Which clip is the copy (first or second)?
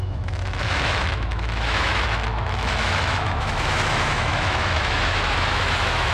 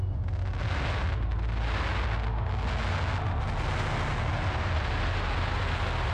first